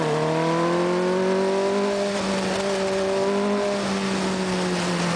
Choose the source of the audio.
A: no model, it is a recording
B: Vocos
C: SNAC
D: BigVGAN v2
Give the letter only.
A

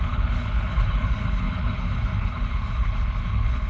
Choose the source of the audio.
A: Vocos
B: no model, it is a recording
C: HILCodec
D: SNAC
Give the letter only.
C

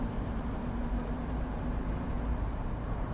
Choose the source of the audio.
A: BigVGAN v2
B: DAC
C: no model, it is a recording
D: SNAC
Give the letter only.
A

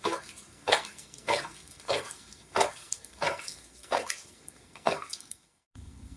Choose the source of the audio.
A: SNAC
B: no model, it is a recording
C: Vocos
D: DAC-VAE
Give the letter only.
A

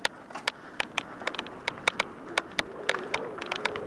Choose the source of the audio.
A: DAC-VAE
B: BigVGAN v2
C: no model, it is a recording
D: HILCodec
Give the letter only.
C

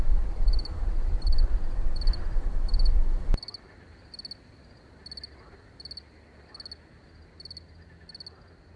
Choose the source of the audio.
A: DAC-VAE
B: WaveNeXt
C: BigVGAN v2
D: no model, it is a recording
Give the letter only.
D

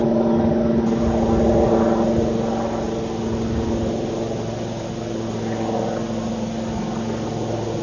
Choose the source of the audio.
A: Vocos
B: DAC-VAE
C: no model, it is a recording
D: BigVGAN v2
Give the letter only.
C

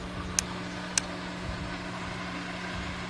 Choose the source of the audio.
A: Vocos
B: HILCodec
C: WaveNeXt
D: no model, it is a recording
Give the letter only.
D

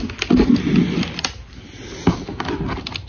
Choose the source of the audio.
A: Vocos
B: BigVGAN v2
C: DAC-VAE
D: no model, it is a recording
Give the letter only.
D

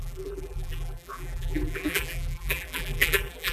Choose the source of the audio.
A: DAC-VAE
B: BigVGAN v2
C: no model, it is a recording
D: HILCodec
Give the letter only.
B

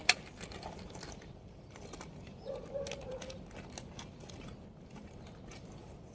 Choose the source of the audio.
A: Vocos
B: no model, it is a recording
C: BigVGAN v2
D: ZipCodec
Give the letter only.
B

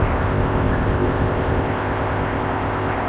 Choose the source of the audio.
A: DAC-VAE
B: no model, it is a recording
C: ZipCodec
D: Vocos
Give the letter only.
C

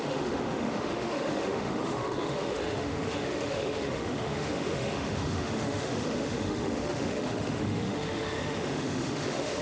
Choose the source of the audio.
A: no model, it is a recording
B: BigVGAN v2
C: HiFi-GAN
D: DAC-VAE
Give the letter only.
D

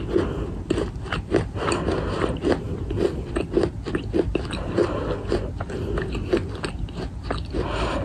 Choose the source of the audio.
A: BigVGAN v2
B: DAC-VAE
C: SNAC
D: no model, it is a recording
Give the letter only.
D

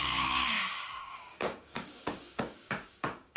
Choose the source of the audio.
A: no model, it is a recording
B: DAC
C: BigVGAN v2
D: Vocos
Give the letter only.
B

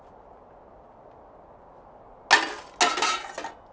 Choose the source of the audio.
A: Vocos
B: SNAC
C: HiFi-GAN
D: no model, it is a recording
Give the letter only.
D